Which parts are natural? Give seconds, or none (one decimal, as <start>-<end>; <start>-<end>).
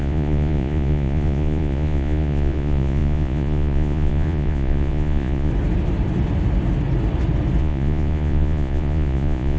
5.5-7.6